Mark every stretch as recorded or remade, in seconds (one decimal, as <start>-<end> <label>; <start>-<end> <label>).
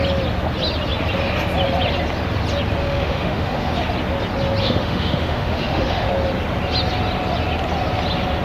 0.0-2.8 recorded; 2.8-3.7 remade; 3.7-4.6 recorded; 4.6-6.1 remade; 6.1-8.4 recorded